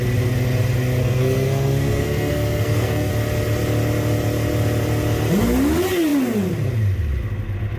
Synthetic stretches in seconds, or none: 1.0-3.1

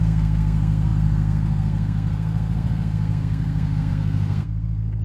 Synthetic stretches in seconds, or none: 0.0-5.0

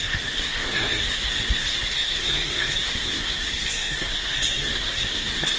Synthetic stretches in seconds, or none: 0.0-5.6

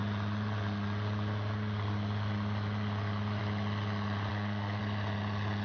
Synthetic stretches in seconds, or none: 4.3-4.8

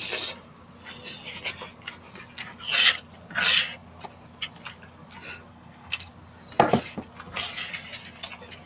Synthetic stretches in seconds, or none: 5.5-6.1